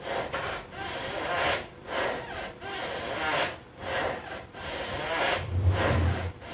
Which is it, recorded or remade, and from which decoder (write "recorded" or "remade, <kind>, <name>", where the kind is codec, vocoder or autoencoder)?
recorded